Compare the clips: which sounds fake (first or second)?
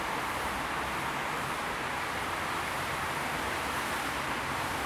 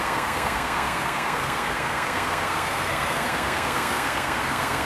second